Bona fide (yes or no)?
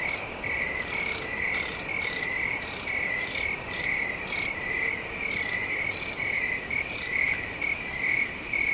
yes